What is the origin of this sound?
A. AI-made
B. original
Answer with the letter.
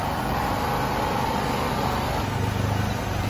B